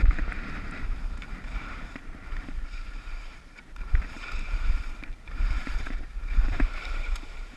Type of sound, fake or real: fake